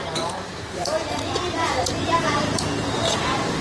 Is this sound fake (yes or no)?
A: yes